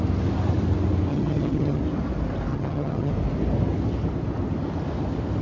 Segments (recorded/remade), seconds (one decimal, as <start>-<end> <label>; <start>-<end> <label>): 0.0-1.1 recorded; 1.1-1.8 remade; 1.8-2.5 recorded; 2.5-3.1 remade; 3.1-5.4 recorded

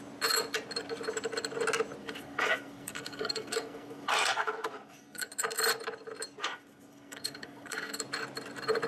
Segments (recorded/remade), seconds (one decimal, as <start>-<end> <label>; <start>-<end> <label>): 0.0-2.0 recorded; 2.0-5.3 remade; 5.3-6.4 recorded; 6.4-8.0 remade; 8.0-8.9 recorded

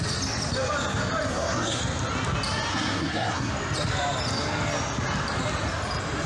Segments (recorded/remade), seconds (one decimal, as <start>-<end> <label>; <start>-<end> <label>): 0.0-1.3 recorded; 1.3-1.8 remade; 1.8-2.7 recorded; 2.7-3.5 remade; 3.5-6.3 recorded

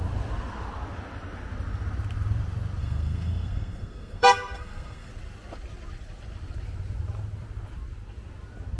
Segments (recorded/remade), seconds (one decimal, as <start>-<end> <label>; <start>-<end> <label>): 0.0-2.8 recorded; 2.8-5.1 remade; 5.1-8.8 recorded

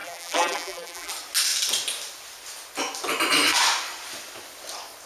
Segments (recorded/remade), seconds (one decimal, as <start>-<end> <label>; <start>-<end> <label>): 0.0-1.1 remade; 1.1-5.1 recorded

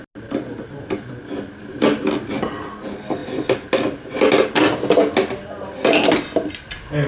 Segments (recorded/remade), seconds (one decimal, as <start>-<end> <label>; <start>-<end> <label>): 0.0-7.1 recorded

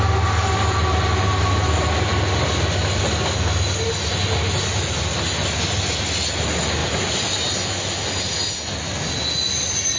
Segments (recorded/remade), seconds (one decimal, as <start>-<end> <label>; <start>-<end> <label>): 0.0-10.0 recorded